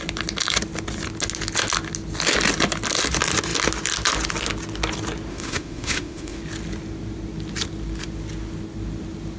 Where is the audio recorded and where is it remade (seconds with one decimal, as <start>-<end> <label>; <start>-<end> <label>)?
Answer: 0.0-5.3 recorded; 5.3-6.4 remade; 6.4-9.4 recorded